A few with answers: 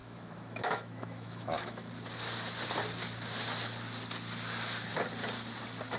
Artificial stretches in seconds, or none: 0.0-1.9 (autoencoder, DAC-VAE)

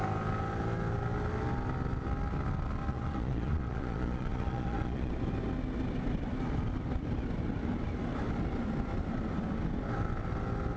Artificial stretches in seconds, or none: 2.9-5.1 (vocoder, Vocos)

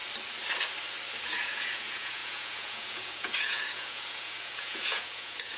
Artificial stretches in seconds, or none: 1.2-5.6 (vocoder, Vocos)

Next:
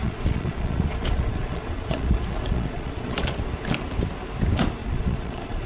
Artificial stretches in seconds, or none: 0.0-3.4 (vocoder, Vocos); 4.8-5.7